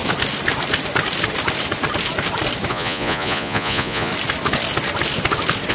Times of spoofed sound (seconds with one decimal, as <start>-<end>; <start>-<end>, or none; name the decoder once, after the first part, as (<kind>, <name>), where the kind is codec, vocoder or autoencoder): 2.7-4.1 (vocoder, Vocos)